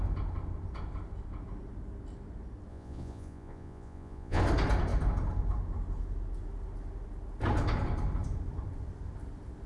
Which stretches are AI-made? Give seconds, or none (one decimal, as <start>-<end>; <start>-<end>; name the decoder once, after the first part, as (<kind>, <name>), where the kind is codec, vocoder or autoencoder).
2.7-4.4 (vocoder, Vocos)